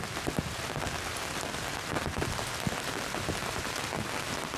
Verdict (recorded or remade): recorded